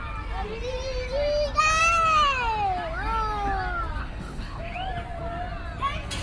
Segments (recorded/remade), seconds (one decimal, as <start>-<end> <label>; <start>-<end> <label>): 0.0-4.0 recorded; 4.0-4.6 remade; 4.6-6.2 recorded